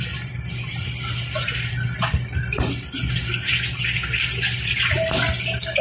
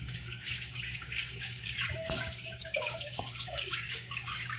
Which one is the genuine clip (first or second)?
first